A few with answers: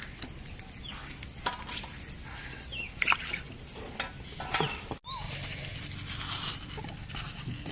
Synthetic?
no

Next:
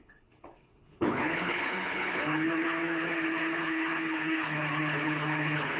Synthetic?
yes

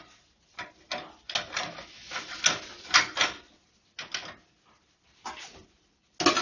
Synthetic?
no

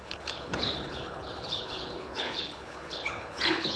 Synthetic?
yes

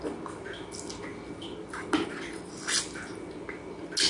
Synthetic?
no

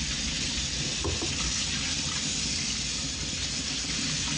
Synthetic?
no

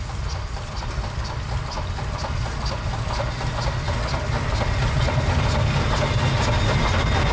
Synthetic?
no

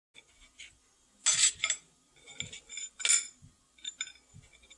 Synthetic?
no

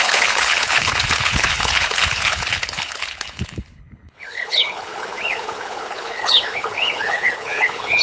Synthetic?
yes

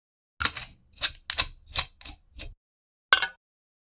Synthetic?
no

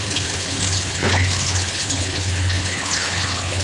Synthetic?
yes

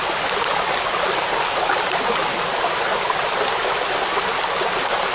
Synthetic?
no